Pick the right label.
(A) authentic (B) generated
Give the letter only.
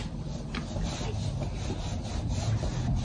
A